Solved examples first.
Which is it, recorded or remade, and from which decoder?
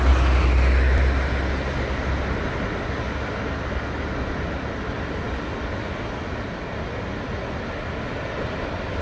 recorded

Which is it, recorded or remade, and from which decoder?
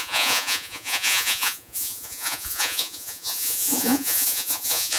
remade, vocoder, Vocos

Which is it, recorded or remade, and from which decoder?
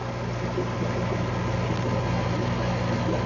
recorded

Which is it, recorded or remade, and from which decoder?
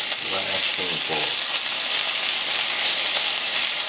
recorded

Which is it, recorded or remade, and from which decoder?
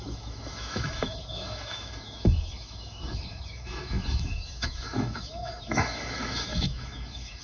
remade, autoencoder, DAC-VAE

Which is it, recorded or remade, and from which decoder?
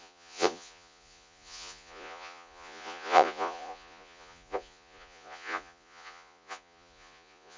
remade, vocoder, Vocos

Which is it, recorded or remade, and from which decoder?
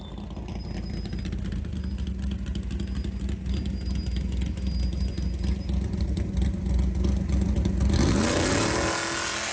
recorded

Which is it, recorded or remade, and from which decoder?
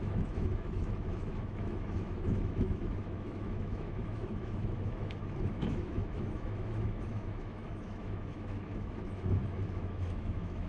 remade, autoencoder, DAC-VAE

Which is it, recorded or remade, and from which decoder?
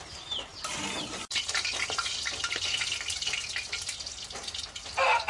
recorded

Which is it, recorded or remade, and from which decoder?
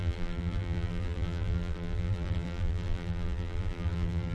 remade, vocoder, BigVGAN v2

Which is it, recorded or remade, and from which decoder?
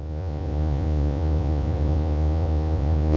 remade, vocoder, Vocos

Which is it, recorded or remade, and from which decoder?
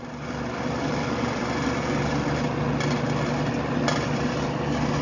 recorded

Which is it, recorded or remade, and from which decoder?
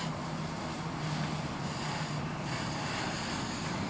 recorded